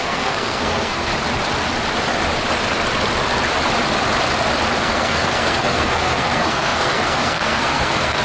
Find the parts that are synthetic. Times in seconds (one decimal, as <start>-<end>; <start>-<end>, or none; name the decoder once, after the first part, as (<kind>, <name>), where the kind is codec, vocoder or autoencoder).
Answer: 0.0-1.1 (codec, SNAC); 4.8-8.2